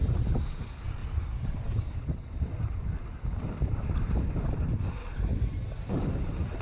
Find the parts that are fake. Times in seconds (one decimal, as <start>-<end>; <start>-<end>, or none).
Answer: none